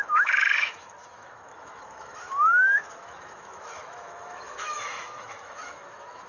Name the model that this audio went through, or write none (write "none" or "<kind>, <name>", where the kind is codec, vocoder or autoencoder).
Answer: autoencoder, DAC-VAE